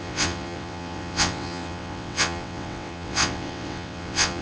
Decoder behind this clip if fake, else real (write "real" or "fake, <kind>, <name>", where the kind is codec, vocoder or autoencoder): fake, vocoder, WaveNeXt